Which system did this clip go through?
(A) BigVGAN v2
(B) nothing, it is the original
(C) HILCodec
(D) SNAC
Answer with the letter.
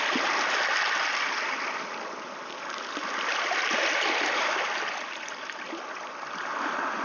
B